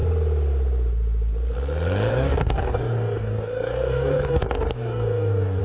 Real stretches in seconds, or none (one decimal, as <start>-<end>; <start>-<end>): 0.0-2.1